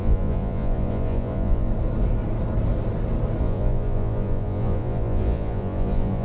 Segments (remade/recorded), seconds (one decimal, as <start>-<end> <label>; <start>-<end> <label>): 0.0-1.7 remade; 1.7-3.4 recorded; 3.4-6.2 remade